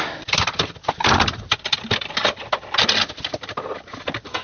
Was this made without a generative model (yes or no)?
no